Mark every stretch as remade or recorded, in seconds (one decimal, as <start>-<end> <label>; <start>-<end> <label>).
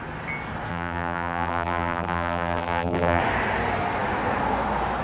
0.0-0.7 recorded; 0.7-3.2 remade; 3.2-5.0 recorded